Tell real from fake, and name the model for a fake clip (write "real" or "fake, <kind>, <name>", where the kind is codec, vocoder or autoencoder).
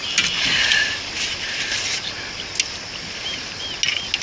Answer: real